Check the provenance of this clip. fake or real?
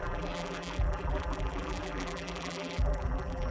fake